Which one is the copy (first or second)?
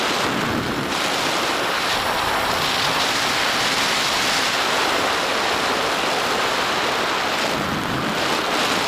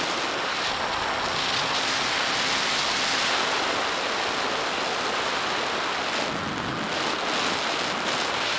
first